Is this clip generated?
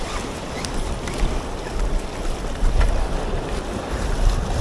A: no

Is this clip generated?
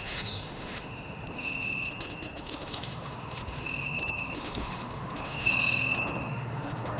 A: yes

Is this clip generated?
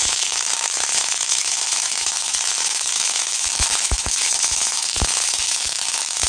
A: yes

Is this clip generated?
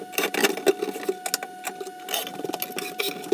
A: no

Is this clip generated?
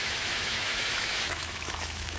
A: yes